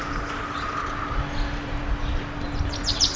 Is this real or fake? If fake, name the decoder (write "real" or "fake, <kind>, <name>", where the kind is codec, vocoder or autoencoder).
real